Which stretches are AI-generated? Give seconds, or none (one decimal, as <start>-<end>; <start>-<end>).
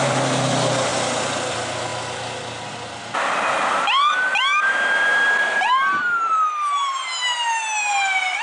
0.0-0.9; 1.5-1.9; 4.3-8.4